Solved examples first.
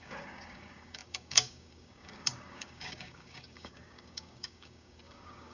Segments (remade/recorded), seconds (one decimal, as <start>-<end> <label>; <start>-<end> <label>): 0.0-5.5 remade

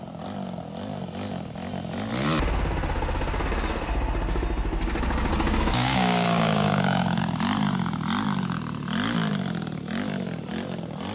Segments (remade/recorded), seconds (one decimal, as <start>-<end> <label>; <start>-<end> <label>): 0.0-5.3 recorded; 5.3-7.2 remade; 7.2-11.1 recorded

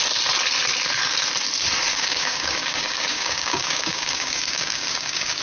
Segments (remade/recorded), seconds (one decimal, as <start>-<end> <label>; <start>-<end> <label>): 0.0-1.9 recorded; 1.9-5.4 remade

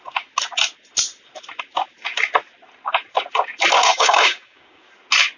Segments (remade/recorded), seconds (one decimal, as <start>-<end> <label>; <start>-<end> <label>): 0.0-3.9 recorded; 3.9-4.8 remade; 4.8-5.4 recorded

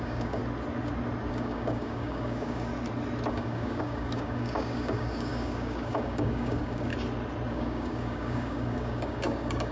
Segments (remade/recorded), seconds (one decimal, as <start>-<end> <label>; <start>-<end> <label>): 0.0-0.4 remade; 0.4-1.3 recorded; 1.3-2.7 remade; 2.7-3.3 recorded; 3.3-6.9 remade; 6.9-7.5 recorded; 7.5-9.7 remade